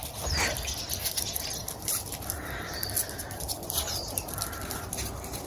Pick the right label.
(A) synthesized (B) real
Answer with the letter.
B